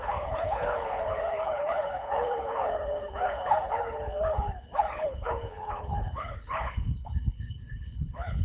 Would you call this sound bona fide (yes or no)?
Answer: no